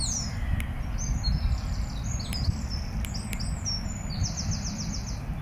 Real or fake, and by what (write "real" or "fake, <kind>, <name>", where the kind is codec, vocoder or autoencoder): real